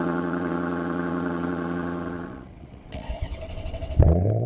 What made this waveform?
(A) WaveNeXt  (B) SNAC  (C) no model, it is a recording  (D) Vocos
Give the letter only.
A